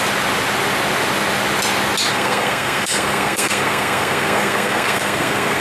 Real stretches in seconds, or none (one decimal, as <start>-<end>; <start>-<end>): 0.0-2.1